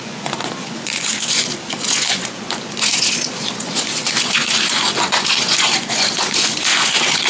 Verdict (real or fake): fake